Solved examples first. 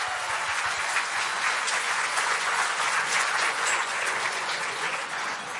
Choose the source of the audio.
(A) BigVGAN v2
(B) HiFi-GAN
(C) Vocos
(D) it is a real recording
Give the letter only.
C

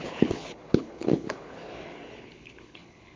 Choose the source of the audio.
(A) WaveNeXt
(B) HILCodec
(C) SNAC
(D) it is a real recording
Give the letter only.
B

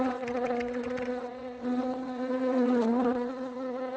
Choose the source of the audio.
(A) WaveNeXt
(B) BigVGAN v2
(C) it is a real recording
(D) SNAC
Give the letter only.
A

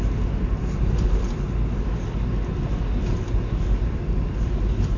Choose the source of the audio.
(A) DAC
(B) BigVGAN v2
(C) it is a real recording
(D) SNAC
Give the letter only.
C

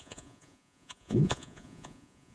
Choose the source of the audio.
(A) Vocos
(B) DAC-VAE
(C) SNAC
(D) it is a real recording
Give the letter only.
A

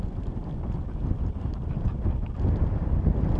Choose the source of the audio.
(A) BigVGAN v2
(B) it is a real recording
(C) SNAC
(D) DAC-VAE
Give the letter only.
B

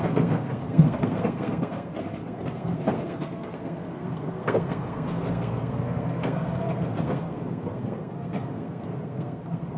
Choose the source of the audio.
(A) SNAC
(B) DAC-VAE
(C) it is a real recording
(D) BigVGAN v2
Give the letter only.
A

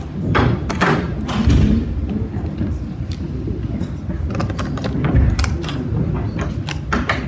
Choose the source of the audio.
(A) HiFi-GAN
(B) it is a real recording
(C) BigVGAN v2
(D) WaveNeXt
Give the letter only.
B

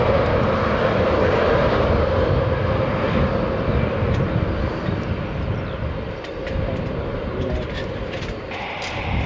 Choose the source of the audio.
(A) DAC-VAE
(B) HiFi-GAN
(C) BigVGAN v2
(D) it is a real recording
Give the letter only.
D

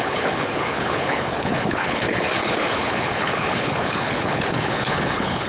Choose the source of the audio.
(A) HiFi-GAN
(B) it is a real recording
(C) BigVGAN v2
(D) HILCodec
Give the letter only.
D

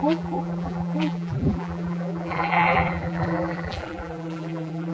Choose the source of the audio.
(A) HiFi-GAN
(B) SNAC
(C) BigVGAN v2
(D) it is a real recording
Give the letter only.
C